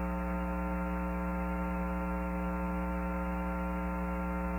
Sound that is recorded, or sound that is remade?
recorded